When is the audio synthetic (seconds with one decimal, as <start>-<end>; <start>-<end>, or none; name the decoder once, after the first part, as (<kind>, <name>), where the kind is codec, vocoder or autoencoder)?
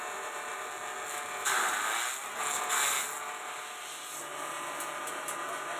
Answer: none